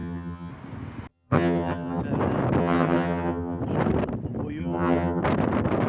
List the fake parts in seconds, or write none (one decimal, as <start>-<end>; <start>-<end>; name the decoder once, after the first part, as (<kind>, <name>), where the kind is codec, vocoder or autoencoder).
0.0-0.5 (vocoder, HiFi-GAN); 1.1-2.0; 2.6-3.6; 4.6-5.2

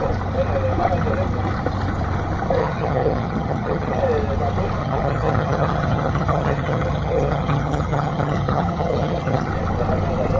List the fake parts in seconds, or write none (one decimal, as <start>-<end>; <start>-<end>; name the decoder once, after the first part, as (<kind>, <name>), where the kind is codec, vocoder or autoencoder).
2.6-4.0 (vocoder, HiFi-GAN); 4.8-9.5

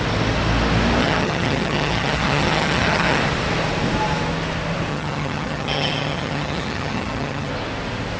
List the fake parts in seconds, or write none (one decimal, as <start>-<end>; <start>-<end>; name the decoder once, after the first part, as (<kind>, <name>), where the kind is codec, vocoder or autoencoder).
1.0-3.2 (vocoder, HiFi-GAN); 4.9-7.5

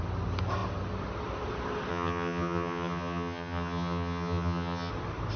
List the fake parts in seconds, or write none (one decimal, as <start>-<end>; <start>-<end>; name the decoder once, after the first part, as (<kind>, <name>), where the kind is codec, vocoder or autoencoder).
1.9-4.9 (vocoder, HiFi-GAN)

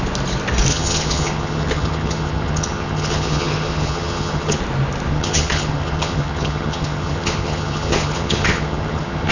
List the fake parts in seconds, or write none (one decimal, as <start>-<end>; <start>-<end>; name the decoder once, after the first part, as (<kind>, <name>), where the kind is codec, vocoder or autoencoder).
0.7-4.6 (vocoder, HiFi-GAN); 5.1-9.3

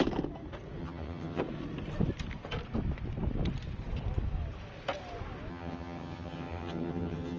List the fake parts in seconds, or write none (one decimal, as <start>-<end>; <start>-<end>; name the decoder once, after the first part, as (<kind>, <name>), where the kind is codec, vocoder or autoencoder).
0.8-1.4 (vocoder, HiFi-GAN); 5.5-7.4